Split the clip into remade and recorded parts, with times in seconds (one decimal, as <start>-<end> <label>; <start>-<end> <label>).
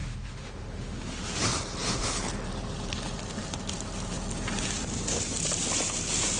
0.0-1.4 remade; 1.4-6.4 recorded